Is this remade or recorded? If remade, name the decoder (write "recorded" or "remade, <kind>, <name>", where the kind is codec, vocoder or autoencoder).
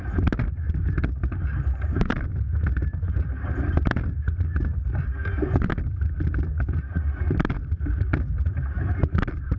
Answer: remade, vocoder, BigVGAN v2